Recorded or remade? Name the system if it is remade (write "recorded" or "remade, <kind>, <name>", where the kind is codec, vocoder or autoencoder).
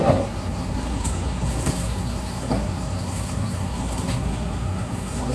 remade, codec, SNAC